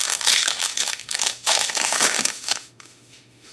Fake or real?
fake